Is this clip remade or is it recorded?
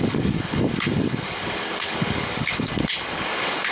remade